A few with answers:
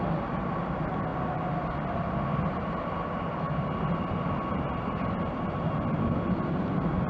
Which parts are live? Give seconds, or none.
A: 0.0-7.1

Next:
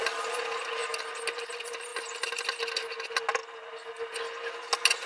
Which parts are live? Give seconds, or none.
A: 0.0-5.1

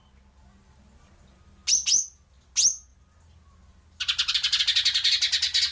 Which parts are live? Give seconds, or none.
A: 0.0-5.7

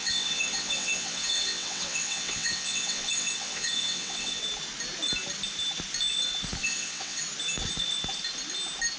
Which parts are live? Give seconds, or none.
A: 4.4-6.6; 7.2-9.0

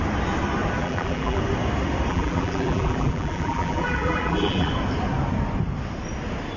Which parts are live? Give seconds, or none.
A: 0.0-0.8; 1.4-2.1; 4.7-6.6

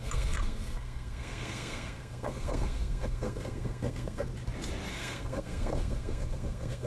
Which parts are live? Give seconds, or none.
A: 4.3-4.9

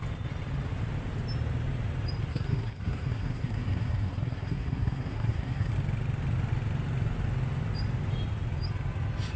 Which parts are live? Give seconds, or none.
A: 0.0-2.3; 5.7-9.4

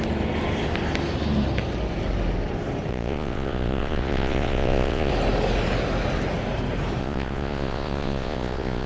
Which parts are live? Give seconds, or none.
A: 0.0-2.9; 5.1-7.0